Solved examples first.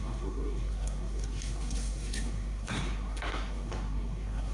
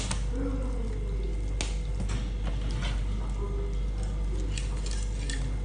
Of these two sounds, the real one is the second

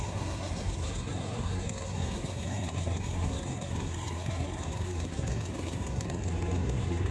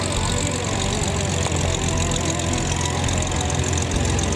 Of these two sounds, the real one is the second